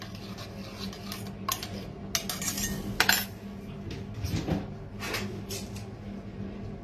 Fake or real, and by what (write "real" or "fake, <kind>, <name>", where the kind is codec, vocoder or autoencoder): real